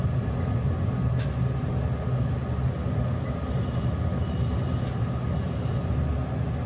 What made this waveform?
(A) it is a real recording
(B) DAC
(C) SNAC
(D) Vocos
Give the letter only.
A